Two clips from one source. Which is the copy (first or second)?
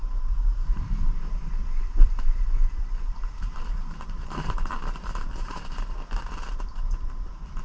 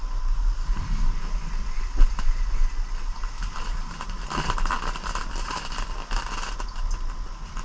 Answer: first